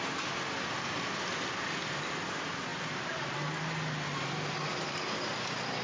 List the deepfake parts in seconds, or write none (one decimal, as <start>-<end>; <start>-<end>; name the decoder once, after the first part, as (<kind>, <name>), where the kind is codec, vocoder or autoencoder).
none